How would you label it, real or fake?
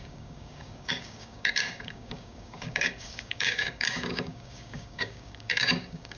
fake